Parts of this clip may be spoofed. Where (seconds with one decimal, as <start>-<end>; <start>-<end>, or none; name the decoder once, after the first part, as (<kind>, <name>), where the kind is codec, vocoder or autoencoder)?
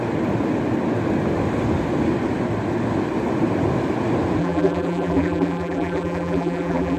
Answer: 4.4-7.0 (vocoder, BigVGAN v2)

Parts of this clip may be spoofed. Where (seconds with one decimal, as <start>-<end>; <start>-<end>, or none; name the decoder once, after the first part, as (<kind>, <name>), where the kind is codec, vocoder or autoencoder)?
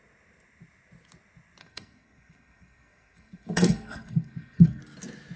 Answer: 1.6-4.8 (codec, SNAC)